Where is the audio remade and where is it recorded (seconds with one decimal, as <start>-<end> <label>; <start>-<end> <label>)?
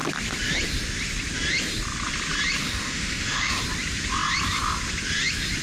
0.0-2.6 recorded; 2.6-3.6 remade; 3.6-5.6 recorded